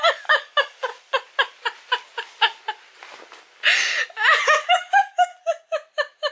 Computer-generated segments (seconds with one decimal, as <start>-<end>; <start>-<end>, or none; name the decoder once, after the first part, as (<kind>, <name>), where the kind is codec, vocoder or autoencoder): 0.0-0.9 (codec, DAC); 4.7-5.3